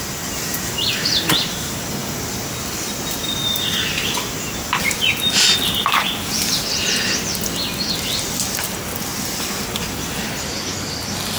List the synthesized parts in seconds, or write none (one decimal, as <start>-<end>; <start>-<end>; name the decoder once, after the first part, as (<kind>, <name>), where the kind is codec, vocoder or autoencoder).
none